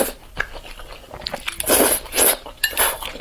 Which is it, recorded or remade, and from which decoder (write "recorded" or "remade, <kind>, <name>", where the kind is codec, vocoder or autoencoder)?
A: recorded